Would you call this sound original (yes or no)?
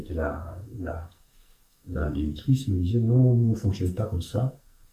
no